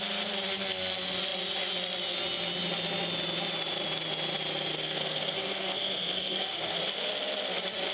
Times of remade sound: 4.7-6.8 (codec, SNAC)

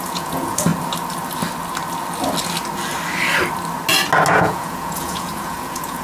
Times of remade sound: 0.0-0.7 (vocoder, Vocos); 4.3-6.0

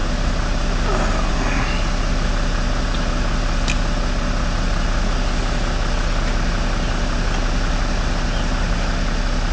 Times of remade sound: none

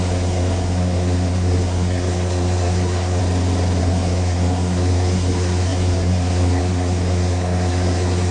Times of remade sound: 0.0-3.2 (codec, SNAC); 3.8-8.3